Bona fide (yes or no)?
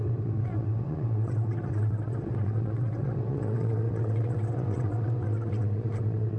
no